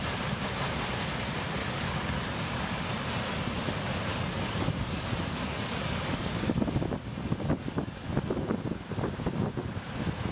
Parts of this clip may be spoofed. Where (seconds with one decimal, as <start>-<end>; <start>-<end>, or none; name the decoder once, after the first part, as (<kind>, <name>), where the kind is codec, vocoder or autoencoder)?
1.6-2.8 (codec, DAC); 4.1-8.1